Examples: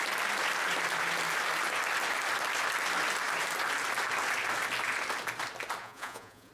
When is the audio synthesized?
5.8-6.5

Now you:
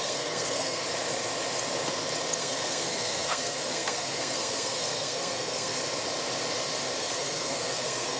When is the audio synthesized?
0.0-0.8; 2.4-5.8; 7.0-8.2

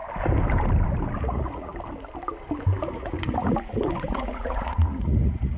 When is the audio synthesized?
1.2-1.7; 2.8-5.6

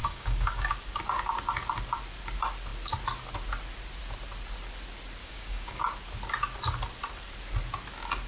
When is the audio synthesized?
0.0-0.7; 5.2-5.8

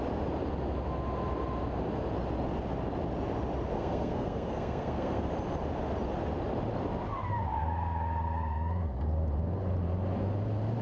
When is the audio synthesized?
3.7-5.3